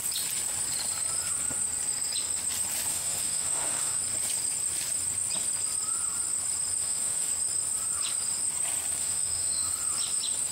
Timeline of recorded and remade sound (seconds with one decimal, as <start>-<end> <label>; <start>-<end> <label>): 0.0-2.9 recorded; 2.9-4.0 remade; 4.0-6.8 recorded; 6.8-7.3 remade; 7.3-9.0 recorded; 9.0-9.7 remade; 9.7-10.5 recorded

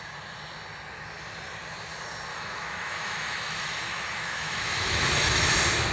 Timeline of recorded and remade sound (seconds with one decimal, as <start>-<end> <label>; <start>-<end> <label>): 0.0-2.3 recorded; 2.3-5.5 remade; 5.5-5.9 recorded

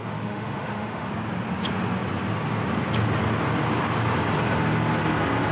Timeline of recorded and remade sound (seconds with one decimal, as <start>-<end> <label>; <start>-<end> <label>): 0.0-1.1 remade; 1.1-5.5 recorded